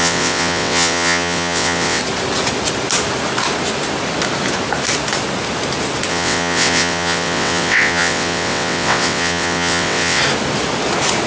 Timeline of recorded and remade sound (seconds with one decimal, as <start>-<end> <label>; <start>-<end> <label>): 0.0-2.0 remade; 2.0-6.1 recorded; 6.1-10.2 remade; 10.2-11.3 recorded